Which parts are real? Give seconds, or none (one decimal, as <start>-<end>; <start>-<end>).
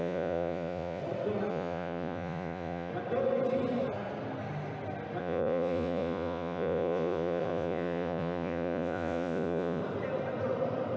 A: 1.0-1.5; 2.9-5.2; 9.8-11.0